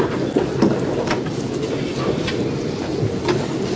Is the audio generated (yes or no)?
no